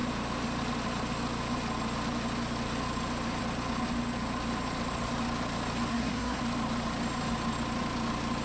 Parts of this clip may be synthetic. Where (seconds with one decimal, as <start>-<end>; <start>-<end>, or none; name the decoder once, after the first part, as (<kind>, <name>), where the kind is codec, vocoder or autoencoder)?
5.9-6.4 (codec, SNAC)